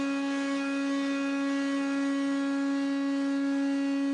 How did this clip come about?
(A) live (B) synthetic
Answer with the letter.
A